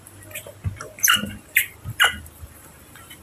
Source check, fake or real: fake